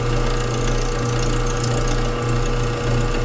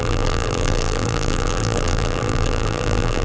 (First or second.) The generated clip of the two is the second